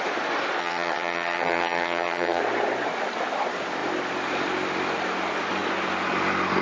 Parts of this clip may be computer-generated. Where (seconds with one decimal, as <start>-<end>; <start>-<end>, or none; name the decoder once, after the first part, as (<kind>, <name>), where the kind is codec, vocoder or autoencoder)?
0.6-2.4 (vocoder, HiFi-GAN)